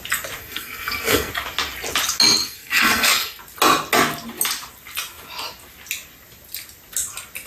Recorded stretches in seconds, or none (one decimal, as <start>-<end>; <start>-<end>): 0.0-0.4; 1.3-2.4; 3.4-7.5

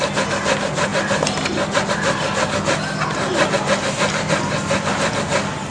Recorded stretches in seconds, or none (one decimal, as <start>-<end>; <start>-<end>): 0.0-5.7

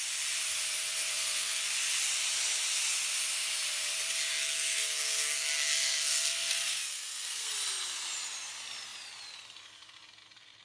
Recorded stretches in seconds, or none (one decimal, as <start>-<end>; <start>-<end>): 0.0-1.1; 1.6-4.3; 7.5-10.6

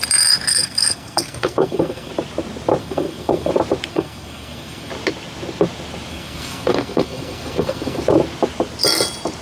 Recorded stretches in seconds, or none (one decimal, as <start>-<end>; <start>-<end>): 0.0-0.5; 2.1-2.8; 3.5-3.9; 4.9-6.1; 8.0-9.4

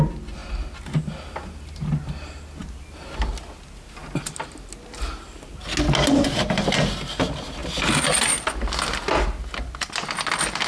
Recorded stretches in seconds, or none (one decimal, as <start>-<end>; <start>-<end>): 0.0-10.7

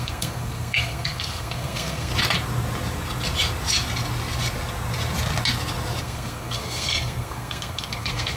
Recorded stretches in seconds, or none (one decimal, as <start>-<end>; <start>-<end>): 2.1-6.0

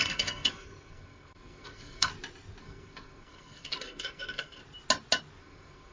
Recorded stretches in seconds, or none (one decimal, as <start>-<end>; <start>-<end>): 2.1-2.6; 4.6-5.4

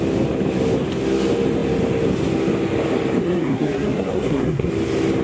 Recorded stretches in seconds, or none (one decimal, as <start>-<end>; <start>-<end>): 0.0-3.2; 4.7-5.2